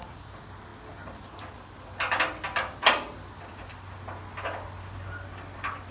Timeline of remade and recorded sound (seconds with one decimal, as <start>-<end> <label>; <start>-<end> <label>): 0.0-5.9 recorded